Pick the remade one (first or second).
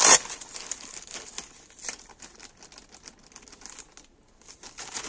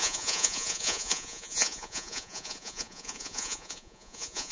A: second